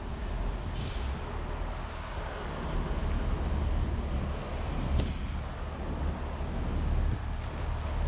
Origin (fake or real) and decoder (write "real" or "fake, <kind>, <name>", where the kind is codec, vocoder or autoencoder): real